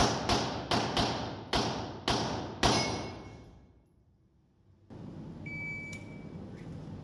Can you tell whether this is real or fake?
real